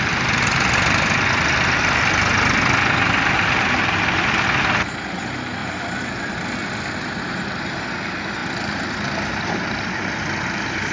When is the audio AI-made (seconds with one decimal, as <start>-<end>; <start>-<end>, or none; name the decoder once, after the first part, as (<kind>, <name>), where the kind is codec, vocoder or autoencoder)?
none

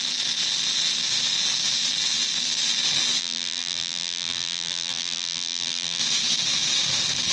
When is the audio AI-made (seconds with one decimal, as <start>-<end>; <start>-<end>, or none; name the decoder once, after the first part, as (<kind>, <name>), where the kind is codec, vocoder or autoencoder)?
3.2-6.0 (vocoder, BigVGAN v2)

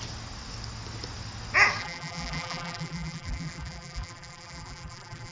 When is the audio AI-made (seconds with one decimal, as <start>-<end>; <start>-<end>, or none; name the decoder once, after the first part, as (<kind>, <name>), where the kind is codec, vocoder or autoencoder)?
1.8-5.3 (vocoder, BigVGAN v2)